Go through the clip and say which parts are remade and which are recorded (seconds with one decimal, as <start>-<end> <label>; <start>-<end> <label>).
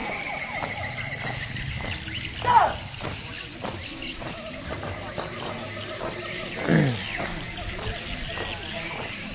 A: 0.0-9.3 recorded